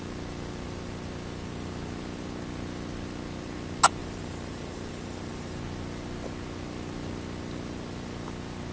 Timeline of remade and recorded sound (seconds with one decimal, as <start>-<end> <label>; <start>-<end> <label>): 0.0-4.0 recorded; 4.0-5.6 remade; 5.6-8.7 recorded